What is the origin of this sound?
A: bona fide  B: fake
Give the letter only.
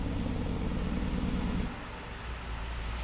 A